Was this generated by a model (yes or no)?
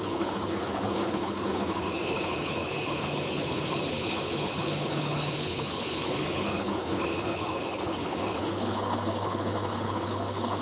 yes